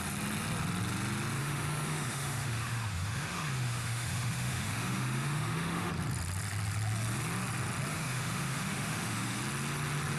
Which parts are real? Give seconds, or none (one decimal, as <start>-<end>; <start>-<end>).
0.0-1.4; 5.9-7.9; 9.4-10.2